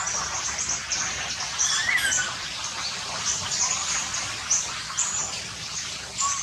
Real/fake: real